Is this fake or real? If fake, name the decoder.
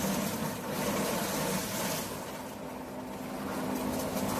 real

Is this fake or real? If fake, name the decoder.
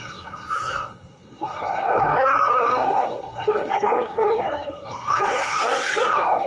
fake, codec, SNAC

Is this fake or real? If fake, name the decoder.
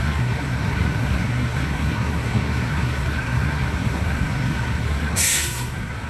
fake, codec, SNAC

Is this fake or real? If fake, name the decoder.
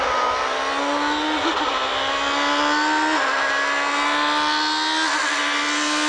real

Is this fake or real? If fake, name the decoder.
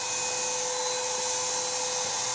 real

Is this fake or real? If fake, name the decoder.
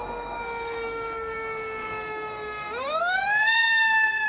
fake, codec, SNAC